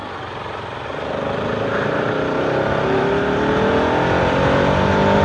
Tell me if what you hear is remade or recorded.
recorded